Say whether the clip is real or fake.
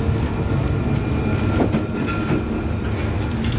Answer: real